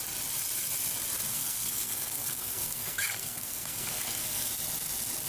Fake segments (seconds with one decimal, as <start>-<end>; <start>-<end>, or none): 1.3-4.5